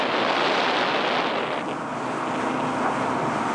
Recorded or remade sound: recorded